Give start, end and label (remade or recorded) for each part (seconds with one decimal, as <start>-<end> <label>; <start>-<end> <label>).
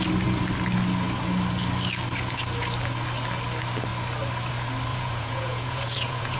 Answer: 0.0-4.9 recorded; 4.9-6.4 remade